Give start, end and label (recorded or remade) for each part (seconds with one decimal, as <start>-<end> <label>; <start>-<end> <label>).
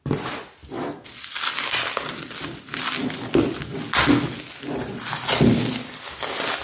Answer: 0.0-6.6 recorded